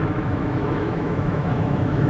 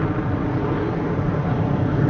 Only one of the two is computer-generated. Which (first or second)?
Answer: first